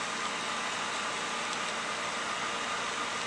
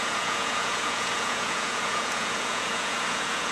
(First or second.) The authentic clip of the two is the first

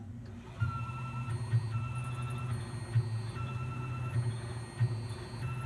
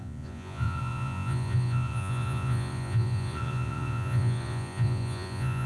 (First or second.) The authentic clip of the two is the first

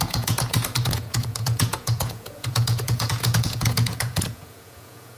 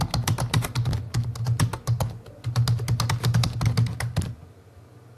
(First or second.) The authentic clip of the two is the second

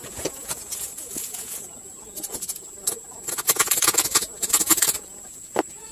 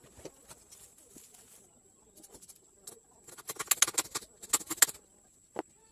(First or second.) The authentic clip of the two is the second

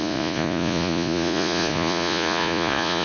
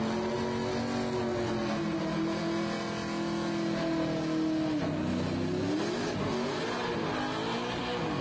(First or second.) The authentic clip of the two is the second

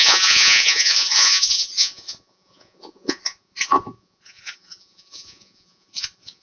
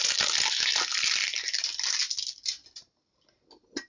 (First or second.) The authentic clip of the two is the second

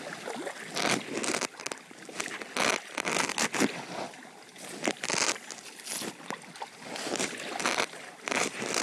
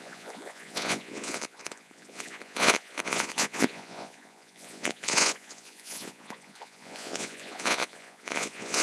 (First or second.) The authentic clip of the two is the first